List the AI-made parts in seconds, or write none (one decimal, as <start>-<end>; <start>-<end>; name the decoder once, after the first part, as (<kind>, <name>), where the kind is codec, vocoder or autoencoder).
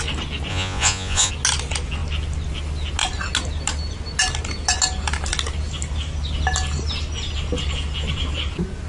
0.5-1.3 (vocoder, Vocos)